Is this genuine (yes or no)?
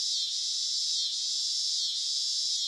yes